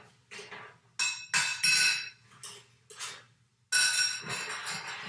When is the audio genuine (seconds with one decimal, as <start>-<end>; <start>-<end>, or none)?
0.0-5.1